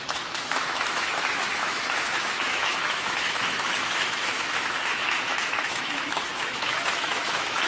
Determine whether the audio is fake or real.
fake